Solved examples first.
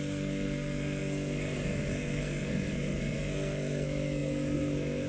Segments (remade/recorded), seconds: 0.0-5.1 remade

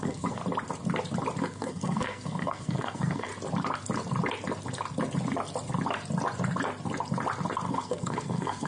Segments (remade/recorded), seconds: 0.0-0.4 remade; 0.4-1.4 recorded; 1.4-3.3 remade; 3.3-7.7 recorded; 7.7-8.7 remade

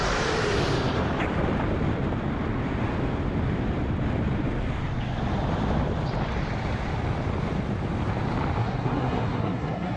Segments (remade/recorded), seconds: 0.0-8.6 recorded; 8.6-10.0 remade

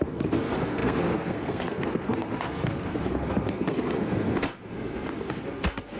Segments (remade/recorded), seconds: 0.0-6.0 remade